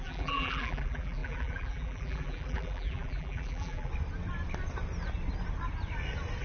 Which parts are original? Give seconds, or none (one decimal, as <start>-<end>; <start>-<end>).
3.9-6.4